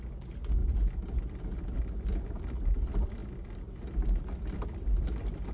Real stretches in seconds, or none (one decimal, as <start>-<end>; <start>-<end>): 0.0-5.5